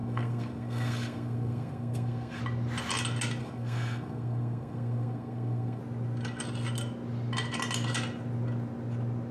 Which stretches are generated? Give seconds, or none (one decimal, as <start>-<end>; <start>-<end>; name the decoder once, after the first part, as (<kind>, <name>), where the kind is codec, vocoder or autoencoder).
0.0-2.4 (codec, SNAC); 3.4-5.8